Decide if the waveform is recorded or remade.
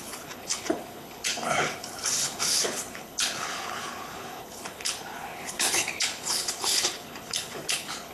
remade